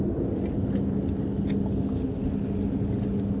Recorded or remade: recorded